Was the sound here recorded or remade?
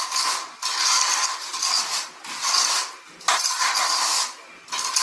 recorded